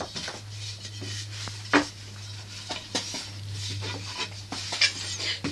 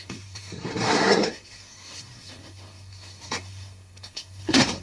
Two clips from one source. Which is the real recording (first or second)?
first